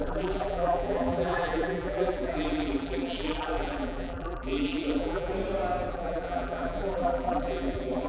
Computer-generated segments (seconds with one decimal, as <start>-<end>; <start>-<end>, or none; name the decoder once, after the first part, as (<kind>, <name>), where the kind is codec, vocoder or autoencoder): 0.0-5.3 (vocoder, BigVGAN v2); 5.9-8.1